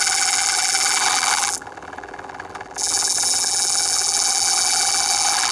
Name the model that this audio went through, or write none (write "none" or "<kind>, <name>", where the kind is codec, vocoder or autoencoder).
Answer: vocoder, BigVGAN v2